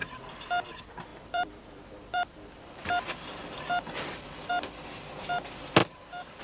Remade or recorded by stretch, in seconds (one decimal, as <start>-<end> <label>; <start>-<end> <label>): 0.0-0.5 remade; 0.5-1.1 recorded; 1.1-2.5 remade; 2.5-5.8 recorded; 5.8-6.4 remade